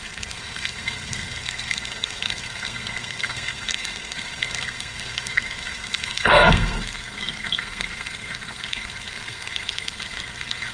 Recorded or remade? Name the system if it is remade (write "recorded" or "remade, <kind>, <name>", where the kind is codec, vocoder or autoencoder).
remade, codec, SNAC